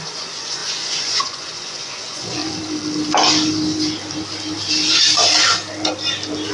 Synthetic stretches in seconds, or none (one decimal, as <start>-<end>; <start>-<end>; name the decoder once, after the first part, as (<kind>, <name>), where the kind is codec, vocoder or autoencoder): 0.0-2.4 (vocoder, Vocos)